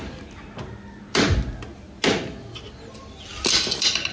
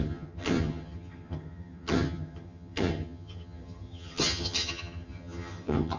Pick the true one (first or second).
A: first